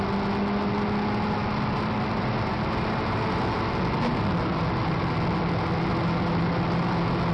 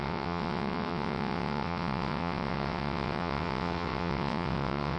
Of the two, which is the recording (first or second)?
first